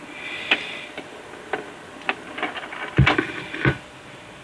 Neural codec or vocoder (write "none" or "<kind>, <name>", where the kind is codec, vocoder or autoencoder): none